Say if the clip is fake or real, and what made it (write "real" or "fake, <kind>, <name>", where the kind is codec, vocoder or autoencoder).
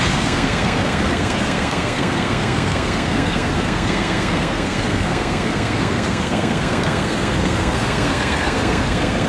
fake, codec, SNAC